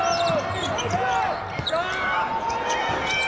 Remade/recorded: recorded